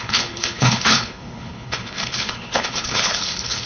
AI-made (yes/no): yes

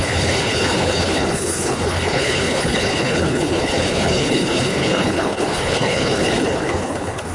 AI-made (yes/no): yes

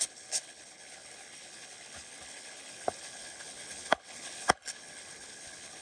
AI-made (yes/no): yes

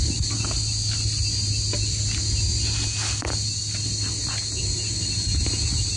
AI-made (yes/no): no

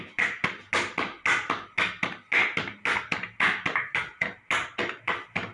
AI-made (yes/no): no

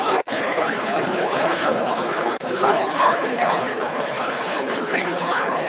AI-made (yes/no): yes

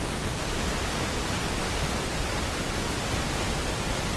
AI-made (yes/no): no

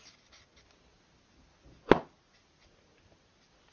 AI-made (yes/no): no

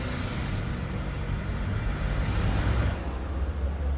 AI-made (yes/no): no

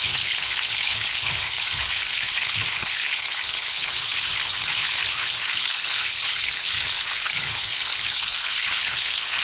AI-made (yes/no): yes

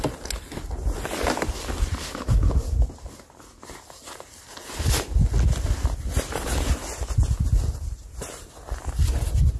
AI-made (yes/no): no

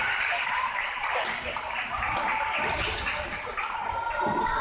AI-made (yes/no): no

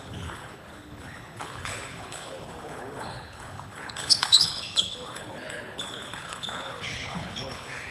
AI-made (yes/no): yes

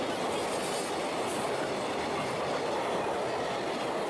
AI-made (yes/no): no